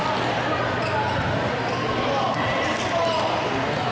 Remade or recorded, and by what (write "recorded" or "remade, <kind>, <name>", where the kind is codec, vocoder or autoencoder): recorded